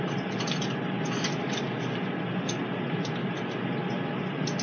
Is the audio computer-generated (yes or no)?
no